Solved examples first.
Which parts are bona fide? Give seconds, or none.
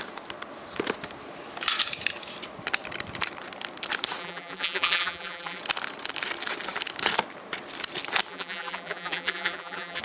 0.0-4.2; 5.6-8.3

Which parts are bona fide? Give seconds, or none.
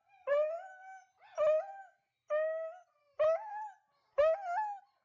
0.0-5.0